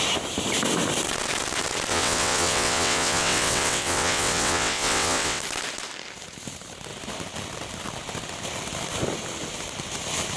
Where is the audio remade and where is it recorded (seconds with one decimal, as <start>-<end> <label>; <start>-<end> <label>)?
0.0-1.9 recorded; 1.9-5.4 remade; 5.4-10.4 recorded